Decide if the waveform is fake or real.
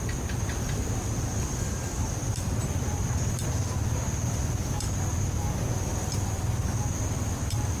fake